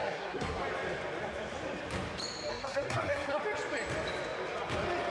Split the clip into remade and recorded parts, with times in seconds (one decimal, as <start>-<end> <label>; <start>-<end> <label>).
0.0-0.6 remade; 0.6-2.5 recorded; 2.5-3.4 remade; 3.4-5.1 recorded